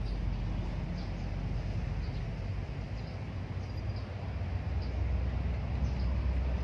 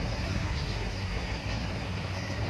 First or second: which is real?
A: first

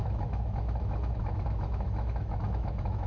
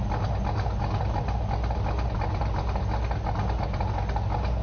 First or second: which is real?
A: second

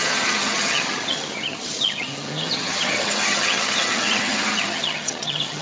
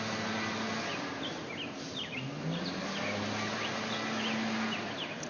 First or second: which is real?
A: second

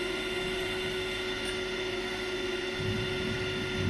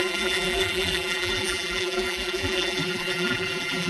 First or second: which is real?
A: first